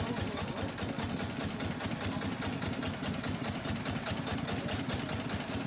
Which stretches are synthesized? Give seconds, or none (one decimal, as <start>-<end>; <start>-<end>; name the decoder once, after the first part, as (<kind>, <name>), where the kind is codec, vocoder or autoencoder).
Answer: none